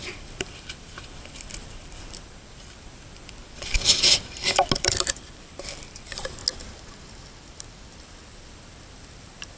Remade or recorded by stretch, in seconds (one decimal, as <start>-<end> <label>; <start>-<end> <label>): 0.0-3.4 remade; 3.4-4.8 recorded; 4.8-6.4 remade; 6.4-7.9 recorded; 7.9-9.6 remade